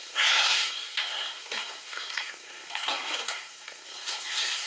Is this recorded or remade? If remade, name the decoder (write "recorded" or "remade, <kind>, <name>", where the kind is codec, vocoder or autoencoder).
remade, codec, SNAC